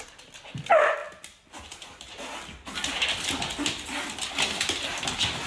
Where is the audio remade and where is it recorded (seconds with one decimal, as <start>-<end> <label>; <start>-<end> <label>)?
0.0-5.5 recorded